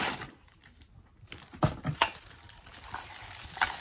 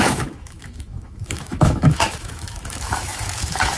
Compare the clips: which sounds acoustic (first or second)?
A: first